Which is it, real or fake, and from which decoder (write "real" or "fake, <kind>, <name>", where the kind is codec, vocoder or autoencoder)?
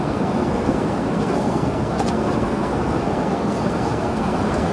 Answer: fake, codec, SNAC